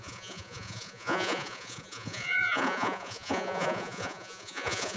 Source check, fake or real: fake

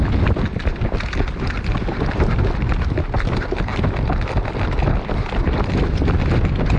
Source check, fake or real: real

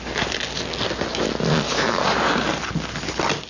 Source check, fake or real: real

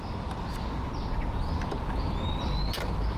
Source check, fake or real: real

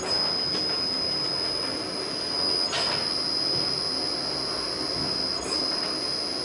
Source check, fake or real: real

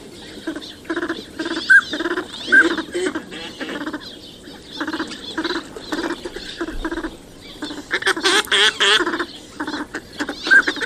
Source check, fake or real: real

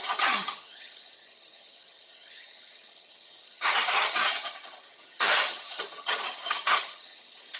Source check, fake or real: fake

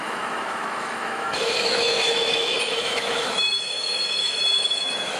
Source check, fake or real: fake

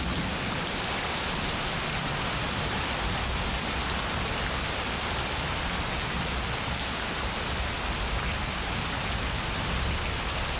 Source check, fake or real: real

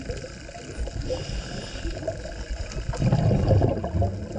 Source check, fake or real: real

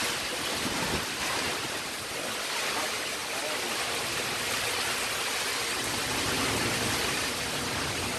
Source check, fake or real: real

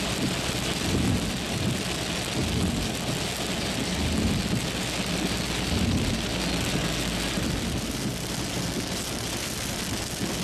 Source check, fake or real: real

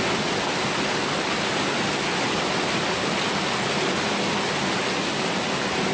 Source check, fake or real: real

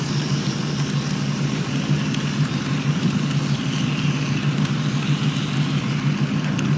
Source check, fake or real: real